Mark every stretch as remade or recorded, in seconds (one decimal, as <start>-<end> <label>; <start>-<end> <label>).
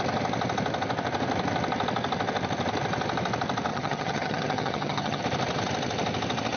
0.0-3.7 recorded; 3.7-5.2 remade; 5.2-6.6 recorded